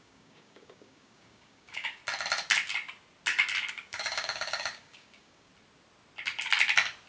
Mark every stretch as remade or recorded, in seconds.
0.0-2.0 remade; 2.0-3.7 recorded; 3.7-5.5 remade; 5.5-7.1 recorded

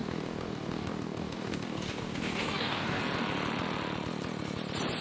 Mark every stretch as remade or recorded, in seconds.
0.0-3.0 remade; 3.0-5.0 recorded

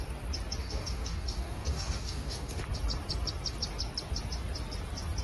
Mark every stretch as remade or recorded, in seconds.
0.0-0.6 recorded; 0.6-2.6 remade; 2.6-5.2 recorded

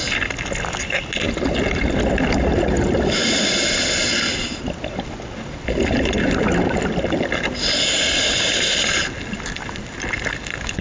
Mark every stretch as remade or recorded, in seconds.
0.0-10.8 recorded